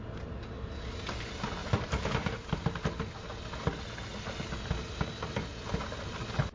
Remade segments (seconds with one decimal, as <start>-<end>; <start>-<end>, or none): 1.6-3.1